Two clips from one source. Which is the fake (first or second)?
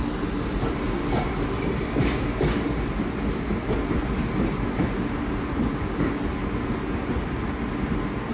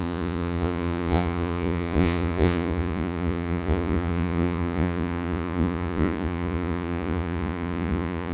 second